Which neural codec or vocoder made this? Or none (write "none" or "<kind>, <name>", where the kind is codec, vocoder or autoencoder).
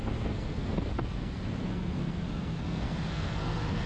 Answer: codec, SNAC